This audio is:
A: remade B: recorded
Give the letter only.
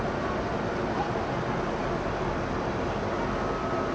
B